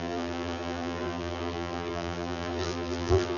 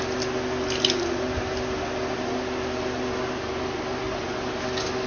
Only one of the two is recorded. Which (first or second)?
second